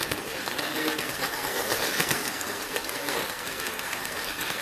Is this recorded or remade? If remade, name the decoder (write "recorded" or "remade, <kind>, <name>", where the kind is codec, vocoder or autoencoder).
remade, codec, SNAC